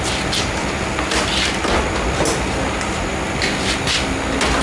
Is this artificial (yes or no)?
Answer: no